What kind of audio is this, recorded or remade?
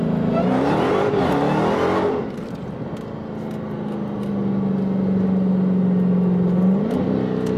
recorded